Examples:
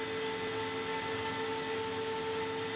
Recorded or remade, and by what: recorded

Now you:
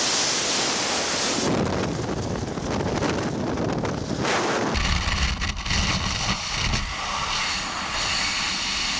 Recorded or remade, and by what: recorded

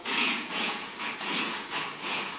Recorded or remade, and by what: remade, vocoder, Vocos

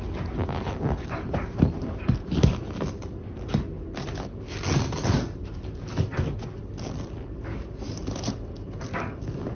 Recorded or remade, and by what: recorded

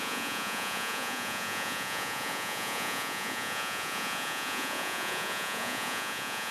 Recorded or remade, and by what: remade, vocoder, Vocos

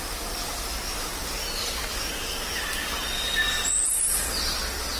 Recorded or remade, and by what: recorded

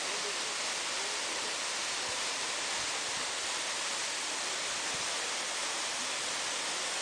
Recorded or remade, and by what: recorded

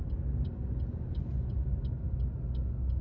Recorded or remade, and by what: recorded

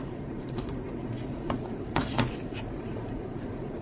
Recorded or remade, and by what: remade, vocoder, Vocos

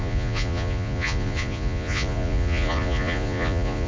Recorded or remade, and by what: remade, vocoder, Vocos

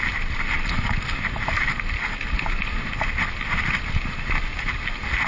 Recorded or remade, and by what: recorded